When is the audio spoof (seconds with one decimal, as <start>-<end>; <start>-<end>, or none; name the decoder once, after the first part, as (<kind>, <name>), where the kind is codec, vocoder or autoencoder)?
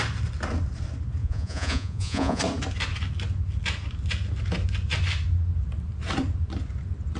1.2-2.4 (vocoder, Vocos)